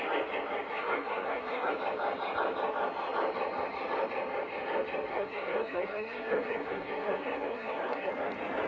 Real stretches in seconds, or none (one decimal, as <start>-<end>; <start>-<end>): 0.0-0.7; 1.7-5.1; 8.1-8.7